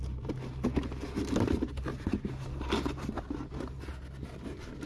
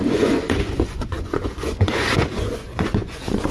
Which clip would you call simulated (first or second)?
second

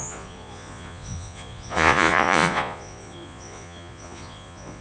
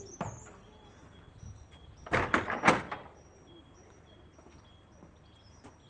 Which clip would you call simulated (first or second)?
first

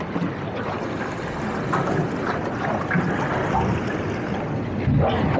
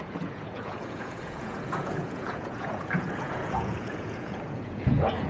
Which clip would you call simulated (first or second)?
second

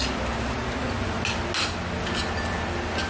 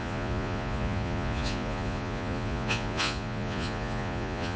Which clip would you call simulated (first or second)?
second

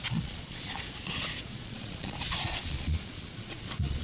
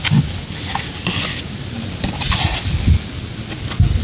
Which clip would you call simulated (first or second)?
first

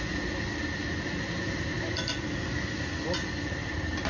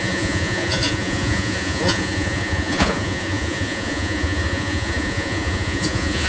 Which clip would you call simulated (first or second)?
second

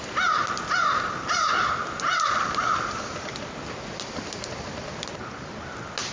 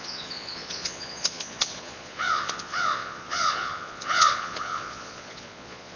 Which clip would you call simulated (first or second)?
second